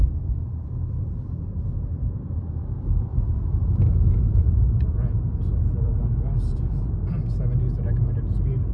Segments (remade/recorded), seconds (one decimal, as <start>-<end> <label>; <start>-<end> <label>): 0.0-3.1 recorded; 3.1-6.9 remade; 6.9-8.7 recorded